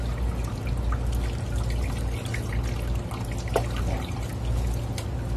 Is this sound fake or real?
real